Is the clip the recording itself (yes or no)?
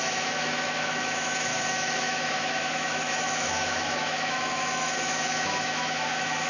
no